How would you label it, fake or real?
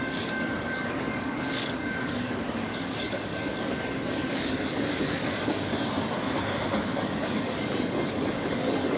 fake